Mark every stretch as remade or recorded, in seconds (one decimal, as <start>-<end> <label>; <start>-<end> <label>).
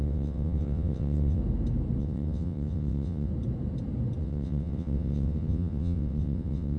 0.0-1.4 remade; 1.4-2.0 recorded; 2.0-3.3 remade; 3.3-4.2 recorded; 4.2-6.8 remade